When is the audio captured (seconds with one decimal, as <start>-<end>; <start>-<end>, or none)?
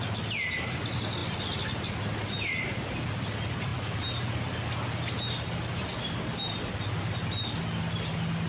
0.0-8.5